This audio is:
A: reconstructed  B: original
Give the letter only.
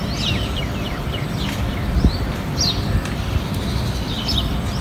B